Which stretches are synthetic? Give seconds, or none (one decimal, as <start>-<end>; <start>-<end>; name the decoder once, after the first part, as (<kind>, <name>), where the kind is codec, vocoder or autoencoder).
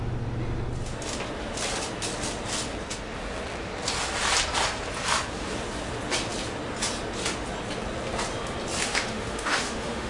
8.8-10.1 (autoencoder, DAC-VAE)